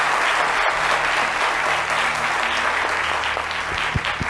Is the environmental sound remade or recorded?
recorded